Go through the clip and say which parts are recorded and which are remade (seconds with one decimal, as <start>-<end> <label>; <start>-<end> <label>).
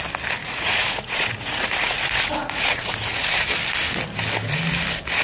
0.0-0.4 recorded; 0.4-3.5 remade; 3.5-5.2 recorded